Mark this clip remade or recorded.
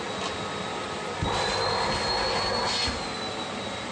recorded